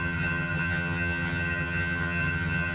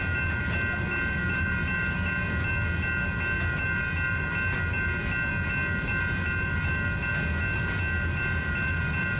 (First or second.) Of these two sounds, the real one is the second